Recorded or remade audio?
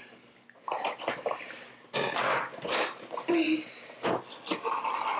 recorded